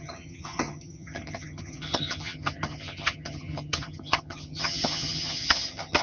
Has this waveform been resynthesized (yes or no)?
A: yes